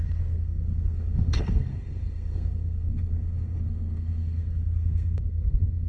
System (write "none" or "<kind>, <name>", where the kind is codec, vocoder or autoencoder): codec, SNAC